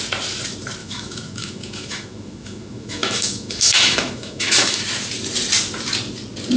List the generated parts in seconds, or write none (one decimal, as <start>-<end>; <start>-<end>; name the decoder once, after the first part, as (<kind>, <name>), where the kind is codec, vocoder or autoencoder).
0.8-4.8 (autoencoder, DAC-VAE)